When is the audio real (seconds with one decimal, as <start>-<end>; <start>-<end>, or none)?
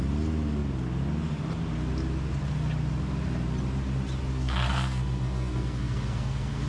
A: 0.0-4.3